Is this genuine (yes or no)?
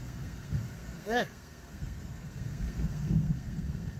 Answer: no